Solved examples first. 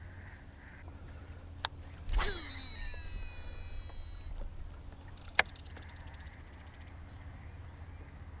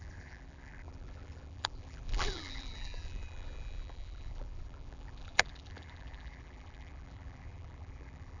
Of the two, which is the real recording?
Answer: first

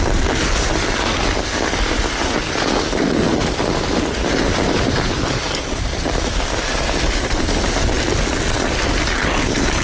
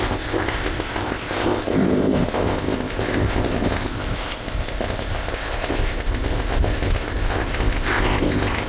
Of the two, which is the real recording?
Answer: first